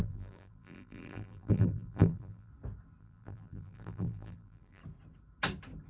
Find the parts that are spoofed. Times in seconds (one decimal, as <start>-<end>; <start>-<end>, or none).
0.0-2.5; 3.0-4.8